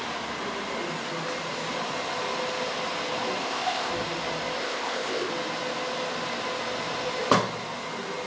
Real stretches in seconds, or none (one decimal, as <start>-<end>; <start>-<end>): 0.0-3.4; 3.9-4.6; 5.3-8.3